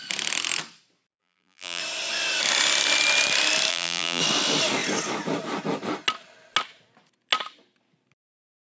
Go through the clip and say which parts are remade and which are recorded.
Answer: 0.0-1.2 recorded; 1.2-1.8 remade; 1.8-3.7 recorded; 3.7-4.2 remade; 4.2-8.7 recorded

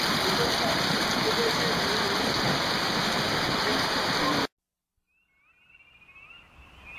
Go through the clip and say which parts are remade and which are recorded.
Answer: 0.0-7.0 recorded

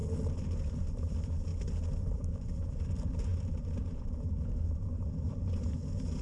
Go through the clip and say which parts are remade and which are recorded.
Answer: 0.0-0.7 recorded; 0.7-1.5 remade; 1.5-2.0 recorded; 2.0-6.2 remade

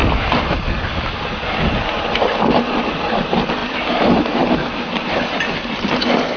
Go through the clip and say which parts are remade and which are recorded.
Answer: 0.0-6.4 recorded

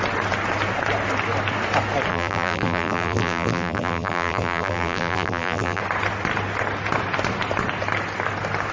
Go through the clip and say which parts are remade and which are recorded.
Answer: 0.0-2.1 recorded; 2.1-5.8 remade; 5.8-8.7 recorded

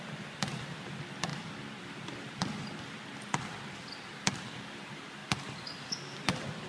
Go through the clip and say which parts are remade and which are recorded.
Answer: 0.0-1.3 remade; 1.3-1.8 recorded; 1.8-5.2 remade; 5.2-6.7 recorded

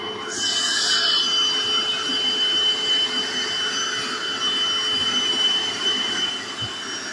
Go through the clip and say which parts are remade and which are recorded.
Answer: 0.0-0.5 recorded; 0.5-1.2 remade; 1.2-5.0 recorded; 5.0-6.3 remade; 6.3-7.1 recorded